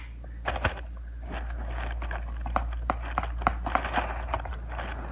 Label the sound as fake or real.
real